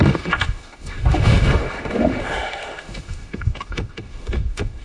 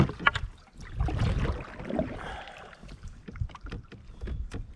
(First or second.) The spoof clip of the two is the first